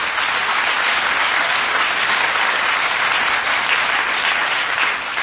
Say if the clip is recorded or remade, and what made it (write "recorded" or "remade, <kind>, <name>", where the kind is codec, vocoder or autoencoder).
recorded